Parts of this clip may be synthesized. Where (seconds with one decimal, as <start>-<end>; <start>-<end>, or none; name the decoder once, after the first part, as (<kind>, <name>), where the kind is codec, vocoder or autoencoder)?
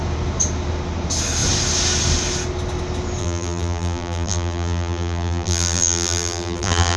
3.2-7.0 (vocoder, BigVGAN v2)